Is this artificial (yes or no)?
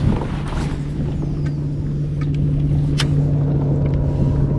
no